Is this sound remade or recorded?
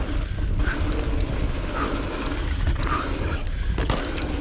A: recorded